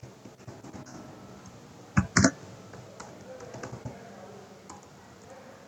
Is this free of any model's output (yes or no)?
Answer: yes